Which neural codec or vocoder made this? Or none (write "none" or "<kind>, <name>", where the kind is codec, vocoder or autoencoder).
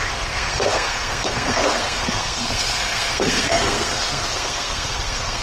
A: codec, SNAC